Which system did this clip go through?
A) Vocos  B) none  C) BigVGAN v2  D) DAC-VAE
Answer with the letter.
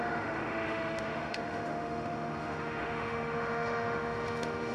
D